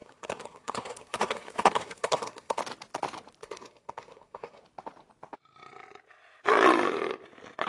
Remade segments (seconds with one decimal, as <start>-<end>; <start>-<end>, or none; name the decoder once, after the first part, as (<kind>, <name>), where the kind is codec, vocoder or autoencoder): 0.0-2.6 (codec, SNAC); 3.4-4.6